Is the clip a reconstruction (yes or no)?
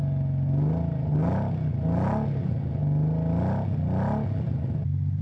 no